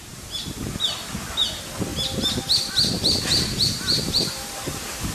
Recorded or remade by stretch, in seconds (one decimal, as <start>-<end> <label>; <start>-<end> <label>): 0.0-5.1 recorded